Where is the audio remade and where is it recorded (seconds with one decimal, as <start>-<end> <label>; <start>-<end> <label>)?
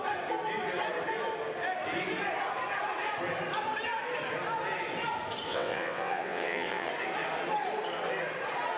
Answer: 0.0-5.5 recorded; 5.5-6.9 remade; 6.9-8.8 recorded